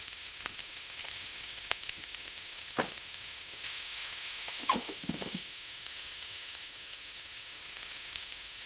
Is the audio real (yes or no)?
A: no